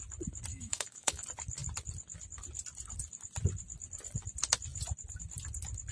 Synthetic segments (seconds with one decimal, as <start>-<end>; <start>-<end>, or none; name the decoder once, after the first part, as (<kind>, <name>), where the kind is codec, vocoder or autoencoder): 0.5-1.2 (autoencoder, DAC-VAE)